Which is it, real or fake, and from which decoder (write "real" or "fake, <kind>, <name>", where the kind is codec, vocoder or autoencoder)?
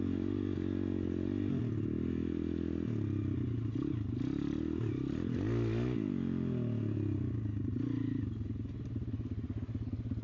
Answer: real